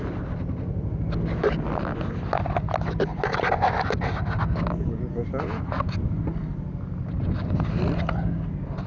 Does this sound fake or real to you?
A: real